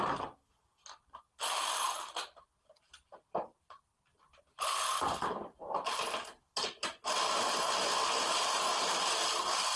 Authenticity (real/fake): real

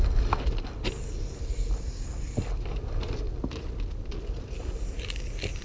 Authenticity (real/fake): real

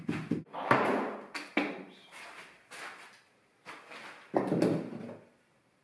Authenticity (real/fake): real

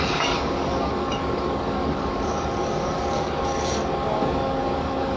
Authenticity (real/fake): fake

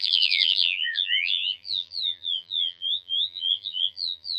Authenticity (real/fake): fake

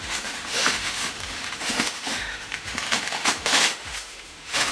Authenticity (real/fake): fake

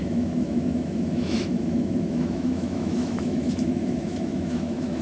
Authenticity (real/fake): fake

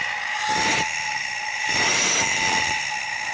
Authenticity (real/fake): real